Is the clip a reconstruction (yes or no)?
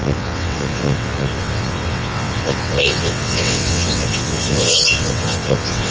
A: yes